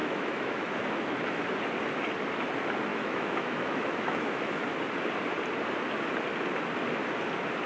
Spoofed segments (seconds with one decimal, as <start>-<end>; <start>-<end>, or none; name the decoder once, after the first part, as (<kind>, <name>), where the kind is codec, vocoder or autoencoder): 0.0-1.4 (autoencoder, DAC-VAE); 2.9-4.6